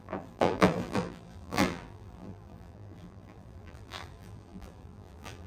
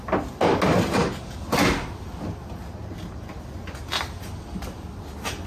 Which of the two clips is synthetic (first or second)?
first